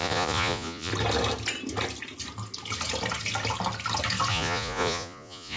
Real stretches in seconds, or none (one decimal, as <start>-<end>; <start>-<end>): 0.9-4.3